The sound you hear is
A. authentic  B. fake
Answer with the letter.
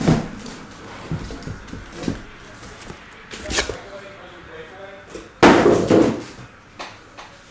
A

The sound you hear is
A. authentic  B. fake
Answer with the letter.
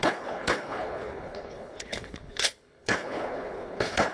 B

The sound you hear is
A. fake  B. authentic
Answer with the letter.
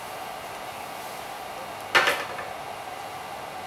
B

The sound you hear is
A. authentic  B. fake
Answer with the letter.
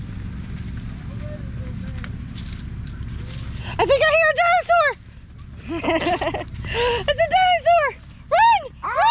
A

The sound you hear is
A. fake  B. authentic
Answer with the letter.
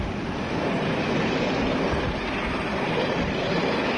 B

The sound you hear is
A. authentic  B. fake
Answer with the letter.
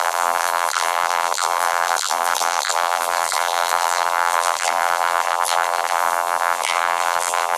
B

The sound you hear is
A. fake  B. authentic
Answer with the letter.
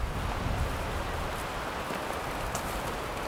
B